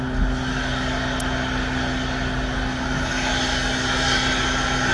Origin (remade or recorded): recorded